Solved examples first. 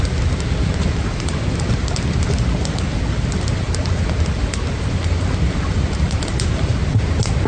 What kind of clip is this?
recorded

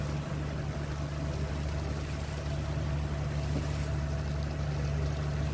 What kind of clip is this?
recorded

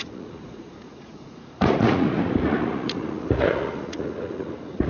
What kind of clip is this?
remade